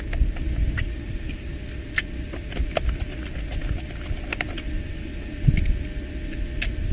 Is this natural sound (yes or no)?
yes